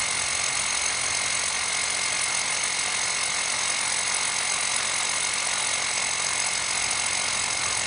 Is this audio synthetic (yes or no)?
no